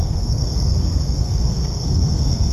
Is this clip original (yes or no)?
no